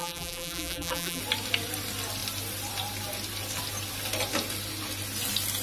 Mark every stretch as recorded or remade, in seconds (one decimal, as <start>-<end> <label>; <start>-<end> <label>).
0.0-1.2 remade; 1.2-5.6 recorded